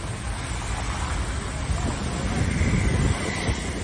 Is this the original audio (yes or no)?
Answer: yes